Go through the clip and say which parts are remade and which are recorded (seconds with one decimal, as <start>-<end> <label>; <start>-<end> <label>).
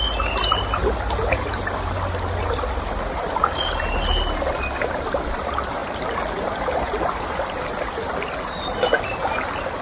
0.0-0.8 recorded; 0.8-1.9 remade; 1.9-9.8 recorded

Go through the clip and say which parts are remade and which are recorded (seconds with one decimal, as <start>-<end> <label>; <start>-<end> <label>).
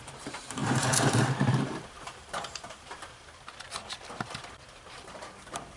0.0-5.8 remade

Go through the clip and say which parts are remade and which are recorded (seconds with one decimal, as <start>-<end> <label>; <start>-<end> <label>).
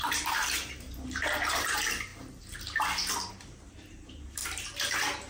0.0-2.1 remade; 2.1-3.3 recorded; 3.3-4.4 remade; 4.4-5.3 recorded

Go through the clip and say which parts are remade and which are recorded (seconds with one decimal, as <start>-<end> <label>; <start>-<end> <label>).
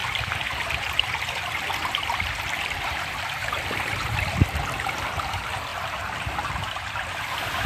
0.0-5.7 remade; 5.7-6.4 recorded; 6.4-7.7 remade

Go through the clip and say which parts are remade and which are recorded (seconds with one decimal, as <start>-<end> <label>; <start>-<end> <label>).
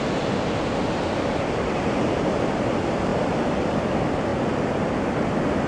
0.0-5.7 recorded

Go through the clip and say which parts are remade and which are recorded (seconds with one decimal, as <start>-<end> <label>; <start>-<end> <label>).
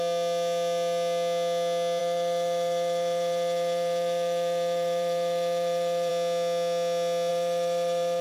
0.0-2.0 recorded; 2.0-6.1 remade; 6.1-7.3 recorded; 7.3-8.2 remade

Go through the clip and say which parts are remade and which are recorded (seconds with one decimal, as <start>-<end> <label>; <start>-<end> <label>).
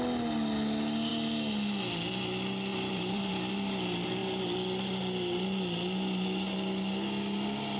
0.0-2.7 recorded; 2.7-3.4 remade; 3.4-7.8 recorded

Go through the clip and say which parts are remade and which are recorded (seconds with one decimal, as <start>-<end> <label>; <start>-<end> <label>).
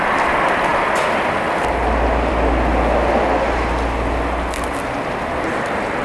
0.0-6.0 recorded